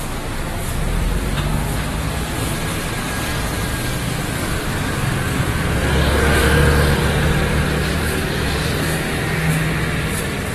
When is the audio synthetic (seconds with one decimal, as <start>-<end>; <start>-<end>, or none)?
4.4-5.8; 7.9-9.5